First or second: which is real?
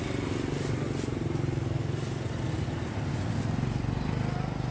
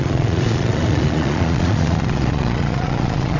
first